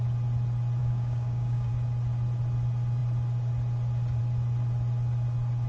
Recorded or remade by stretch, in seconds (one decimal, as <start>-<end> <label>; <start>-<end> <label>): 0.0-0.8 recorded; 0.8-1.7 remade; 1.7-5.7 recorded